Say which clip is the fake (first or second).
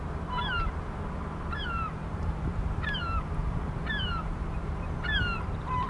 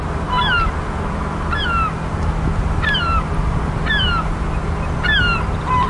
first